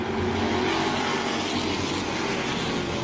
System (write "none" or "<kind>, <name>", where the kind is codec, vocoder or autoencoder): none